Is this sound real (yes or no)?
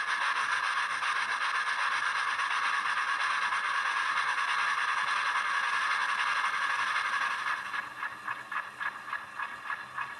yes